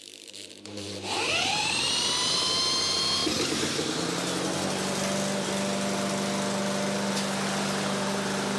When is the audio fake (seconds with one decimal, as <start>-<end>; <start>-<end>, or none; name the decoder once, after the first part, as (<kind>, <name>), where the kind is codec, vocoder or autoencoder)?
0.0-3.2 (vocoder, BigVGAN v2); 7.1-8.6